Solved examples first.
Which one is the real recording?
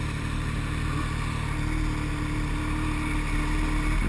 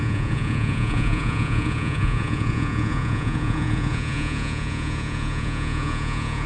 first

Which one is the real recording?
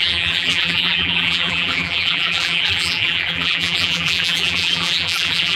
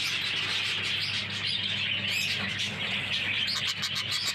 second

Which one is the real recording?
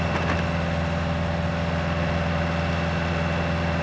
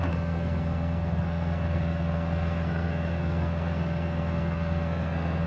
first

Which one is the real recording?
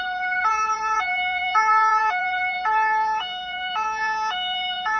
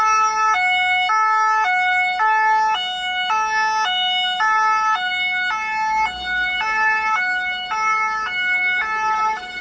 second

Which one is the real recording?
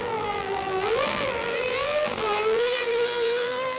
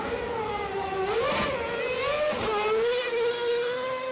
second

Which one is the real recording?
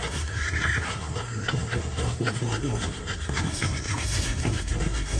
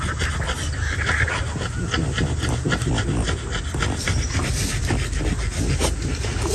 second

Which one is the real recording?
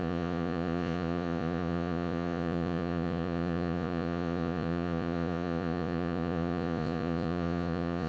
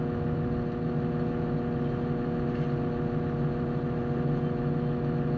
second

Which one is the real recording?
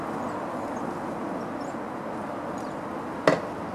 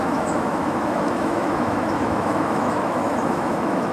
first